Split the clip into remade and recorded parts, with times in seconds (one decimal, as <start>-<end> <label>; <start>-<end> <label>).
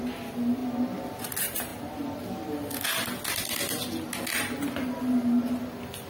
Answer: 0.0-6.1 recorded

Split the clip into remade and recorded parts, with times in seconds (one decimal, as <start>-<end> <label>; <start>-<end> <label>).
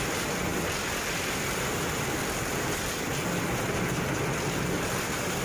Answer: 0.0-5.4 remade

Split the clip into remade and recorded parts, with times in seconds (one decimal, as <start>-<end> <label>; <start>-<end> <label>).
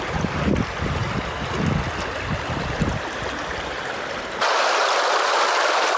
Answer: 0.0-6.0 recorded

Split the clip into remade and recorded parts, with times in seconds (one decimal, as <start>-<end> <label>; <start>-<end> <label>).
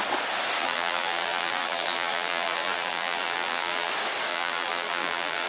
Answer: 0.0-0.6 recorded; 0.6-3.9 remade; 3.9-4.3 recorded; 4.3-5.5 remade